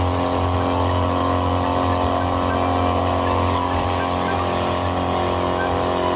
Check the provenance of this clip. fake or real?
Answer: real